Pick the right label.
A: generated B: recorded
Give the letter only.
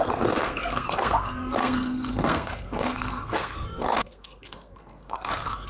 A